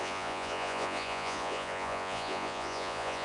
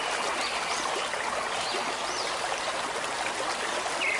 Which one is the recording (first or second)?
second